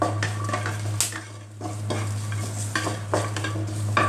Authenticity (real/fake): real